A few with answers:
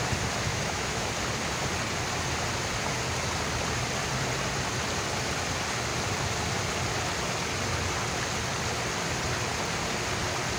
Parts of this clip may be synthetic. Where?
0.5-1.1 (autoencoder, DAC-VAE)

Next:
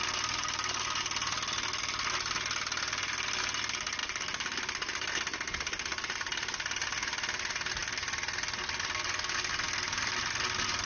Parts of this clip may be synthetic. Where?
none

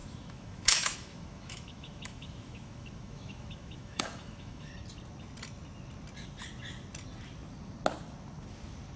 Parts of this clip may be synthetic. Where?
0.0-4.7 (autoencoder, DAC-VAE)

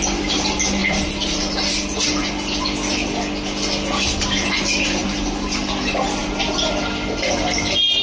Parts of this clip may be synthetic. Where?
none

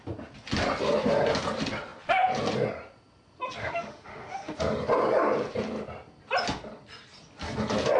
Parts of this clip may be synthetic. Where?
3.6-4.6 (autoencoder, DAC-VAE)

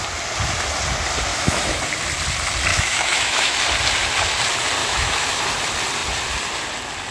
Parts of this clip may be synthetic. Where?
1.3-1.8 (autoencoder, DAC-VAE); 2.7-3.6; 4.8-5.4